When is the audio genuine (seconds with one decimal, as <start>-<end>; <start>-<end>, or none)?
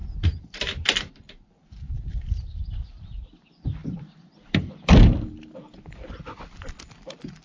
none